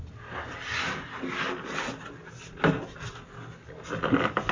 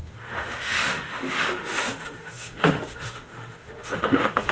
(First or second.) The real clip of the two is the first